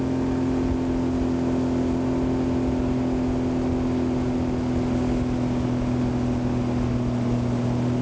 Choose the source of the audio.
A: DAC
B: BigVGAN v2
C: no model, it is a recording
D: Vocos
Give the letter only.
C